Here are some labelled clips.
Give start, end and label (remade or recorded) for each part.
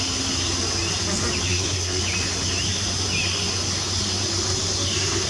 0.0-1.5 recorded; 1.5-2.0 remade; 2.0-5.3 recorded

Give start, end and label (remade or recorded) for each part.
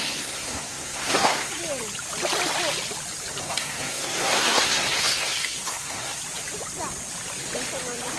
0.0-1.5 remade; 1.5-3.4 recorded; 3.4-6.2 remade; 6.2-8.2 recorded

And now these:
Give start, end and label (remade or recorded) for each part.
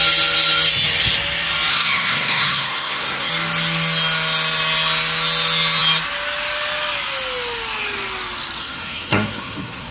0.0-1.7 recorded; 1.7-3.3 remade; 3.3-8.6 recorded; 8.6-9.9 remade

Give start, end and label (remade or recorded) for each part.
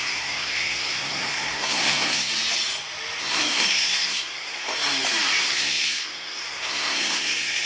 0.0-2.3 remade; 2.3-3.2 recorded; 3.2-4.7 remade; 4.7-5.4 recorded; 5.4-7.7 remade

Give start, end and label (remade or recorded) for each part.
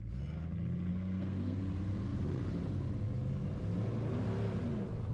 0.0-0.9 recorded; 0.9-1.6 remade; 1.6-5.1 recorded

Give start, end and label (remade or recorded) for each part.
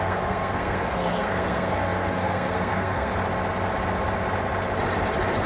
0.0-3.1 remade; 3.1-5.5 recorded